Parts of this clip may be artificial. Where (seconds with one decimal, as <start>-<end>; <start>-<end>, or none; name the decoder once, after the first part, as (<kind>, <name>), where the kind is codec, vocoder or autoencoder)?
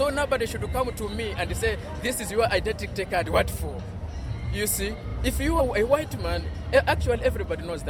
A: none